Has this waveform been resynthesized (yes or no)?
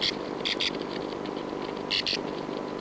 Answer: no